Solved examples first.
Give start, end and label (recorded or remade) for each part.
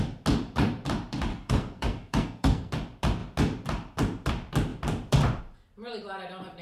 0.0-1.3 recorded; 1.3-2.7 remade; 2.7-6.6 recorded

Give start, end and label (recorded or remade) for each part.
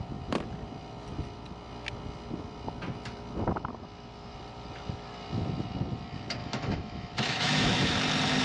0.0-6.4 recorded; 6.4-8.0 remade; 8.0-8.4 recorded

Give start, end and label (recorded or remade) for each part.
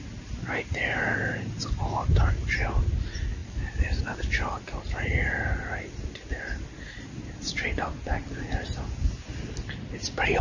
0.0-10.4 recorded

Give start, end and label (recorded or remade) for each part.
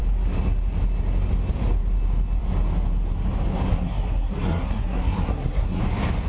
0.0-3.7 recorded; 3.7-5.8 remade; 5.8-6.3 recorded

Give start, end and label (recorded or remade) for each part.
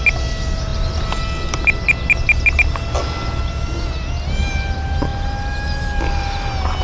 0.0-6.8 recorded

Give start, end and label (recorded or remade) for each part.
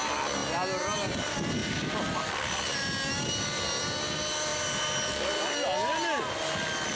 0.0-1.6 recorded; 1.6-2.3 remade; 2.3-7.0 recorded